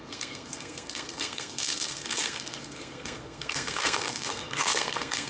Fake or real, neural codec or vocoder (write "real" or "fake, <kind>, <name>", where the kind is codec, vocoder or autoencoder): fake, codec, SNAC